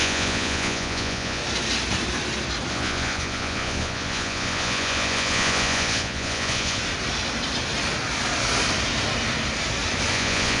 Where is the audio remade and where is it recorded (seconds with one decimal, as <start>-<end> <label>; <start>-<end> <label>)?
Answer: 0.0-1.4 remade; 1.4-2.7 recorded; 2.7-6.8 remade; 6.8-10.1 recorded; 10.1-10.6 remade